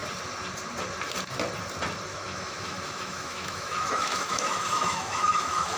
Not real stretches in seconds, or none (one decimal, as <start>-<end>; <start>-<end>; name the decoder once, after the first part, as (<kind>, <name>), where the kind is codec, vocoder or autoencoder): 2.1-5.8 (autoencoder, DAC-VAE)